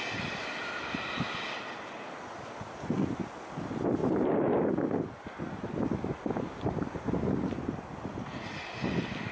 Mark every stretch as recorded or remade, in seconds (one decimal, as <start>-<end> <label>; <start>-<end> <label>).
0.0-4.0 remade; 4.0-5.3 recorded; 5.3-9.3 remade